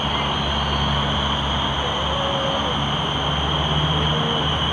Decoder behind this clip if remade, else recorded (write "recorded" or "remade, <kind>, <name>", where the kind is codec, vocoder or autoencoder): recorded